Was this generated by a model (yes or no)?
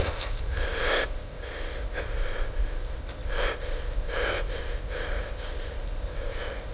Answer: yes